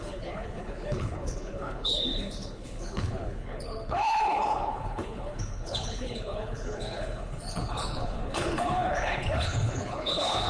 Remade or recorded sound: remade